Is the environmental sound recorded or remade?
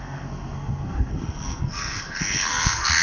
remade